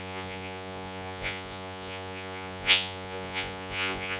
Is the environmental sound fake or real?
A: fake